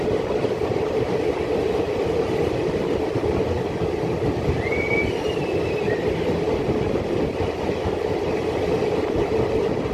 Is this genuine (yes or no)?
yes